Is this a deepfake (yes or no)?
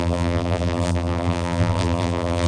yes